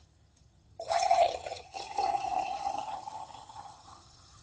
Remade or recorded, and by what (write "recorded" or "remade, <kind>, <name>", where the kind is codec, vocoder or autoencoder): remade, vocoder, HiFi-GAN